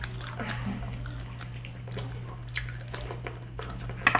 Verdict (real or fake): real